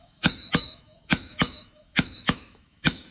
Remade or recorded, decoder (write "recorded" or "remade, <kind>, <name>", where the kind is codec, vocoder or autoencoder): remade, autoencoder, DAC-VAE